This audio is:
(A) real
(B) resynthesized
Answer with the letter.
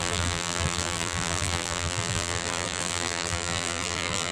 B